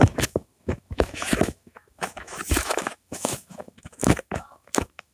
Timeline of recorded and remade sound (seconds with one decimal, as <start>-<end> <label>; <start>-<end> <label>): 0.0-5.1 remade